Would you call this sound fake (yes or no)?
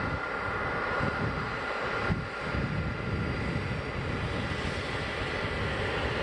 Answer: no